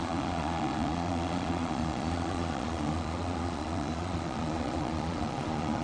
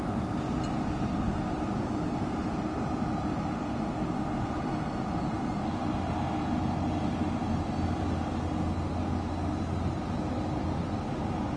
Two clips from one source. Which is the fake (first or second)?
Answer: first